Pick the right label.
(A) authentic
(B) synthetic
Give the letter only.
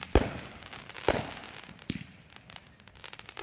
A